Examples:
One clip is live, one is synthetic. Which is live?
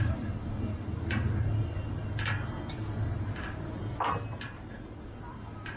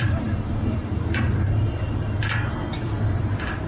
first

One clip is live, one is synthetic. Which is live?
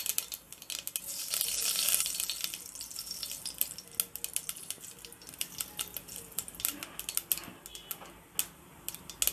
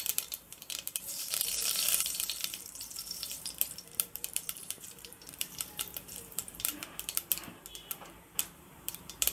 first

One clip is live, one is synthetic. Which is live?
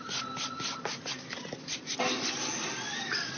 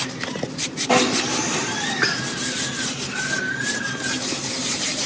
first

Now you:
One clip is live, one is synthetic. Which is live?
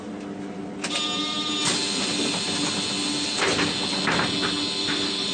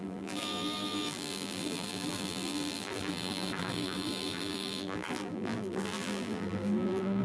first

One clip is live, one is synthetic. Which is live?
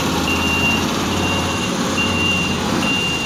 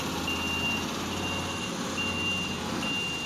second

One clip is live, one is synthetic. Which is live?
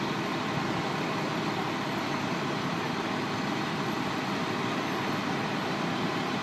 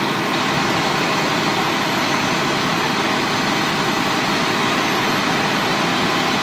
second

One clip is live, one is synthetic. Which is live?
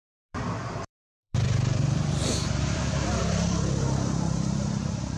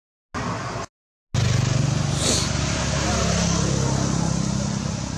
second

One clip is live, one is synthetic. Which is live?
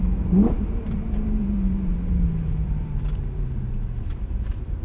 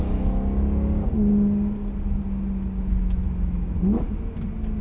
second